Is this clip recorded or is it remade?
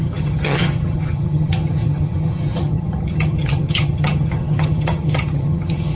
remade